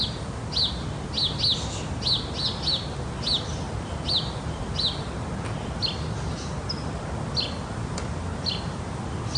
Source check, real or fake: real